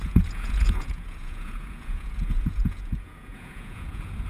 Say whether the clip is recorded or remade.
remade